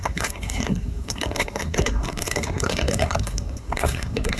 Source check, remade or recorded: remade